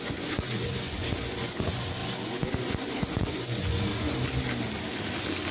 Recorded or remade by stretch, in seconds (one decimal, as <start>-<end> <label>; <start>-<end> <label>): 0.0-3.9 remade; 3.9-5.5 recorded